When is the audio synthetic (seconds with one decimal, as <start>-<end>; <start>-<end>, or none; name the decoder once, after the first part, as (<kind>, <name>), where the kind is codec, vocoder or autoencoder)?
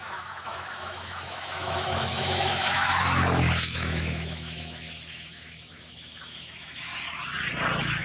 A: 0.0-6.9 (autoencoder, DAC-VAE)